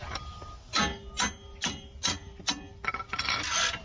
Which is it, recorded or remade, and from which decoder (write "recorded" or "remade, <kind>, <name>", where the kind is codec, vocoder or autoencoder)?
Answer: recorded